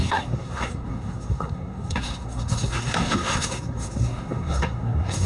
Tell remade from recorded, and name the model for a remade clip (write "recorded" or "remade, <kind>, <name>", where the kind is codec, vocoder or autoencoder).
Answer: remade, codec, SNAC